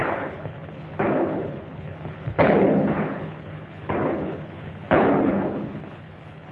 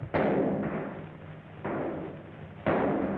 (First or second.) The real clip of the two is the second